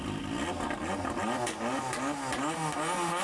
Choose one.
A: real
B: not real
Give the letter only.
A